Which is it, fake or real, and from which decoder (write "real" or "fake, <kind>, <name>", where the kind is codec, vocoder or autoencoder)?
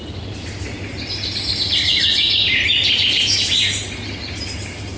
real